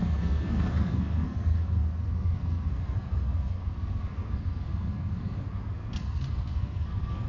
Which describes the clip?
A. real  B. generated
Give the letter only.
B